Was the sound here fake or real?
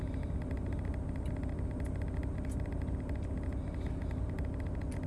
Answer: real